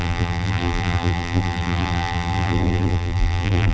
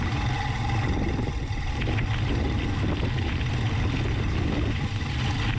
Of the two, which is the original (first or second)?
second